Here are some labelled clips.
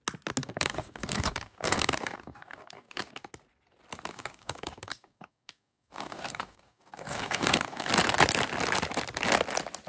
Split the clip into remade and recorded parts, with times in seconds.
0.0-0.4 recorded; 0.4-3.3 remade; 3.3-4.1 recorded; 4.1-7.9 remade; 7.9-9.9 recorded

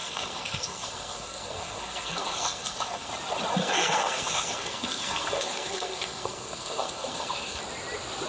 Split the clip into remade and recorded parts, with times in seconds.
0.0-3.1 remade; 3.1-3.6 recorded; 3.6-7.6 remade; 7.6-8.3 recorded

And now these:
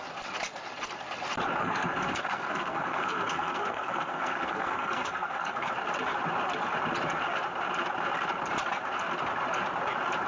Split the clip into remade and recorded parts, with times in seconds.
0.0-1.6 recorded; 1.6-5.7 remade; 5.7-10.3 recorded

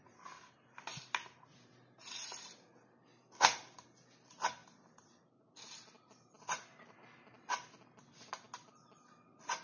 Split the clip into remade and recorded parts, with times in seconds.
0.0-9.6 recorded

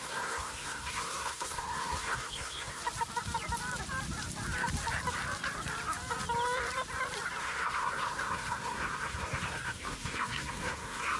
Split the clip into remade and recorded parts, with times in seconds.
0.0-2.8 remade; 2.8-7.4 recorded; 7.4-11.2 remade

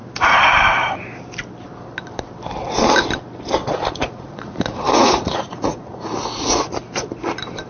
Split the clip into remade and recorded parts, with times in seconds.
0.0-3.6 recorded; 3.6-6.7 remade; 6.7-7.7 recorded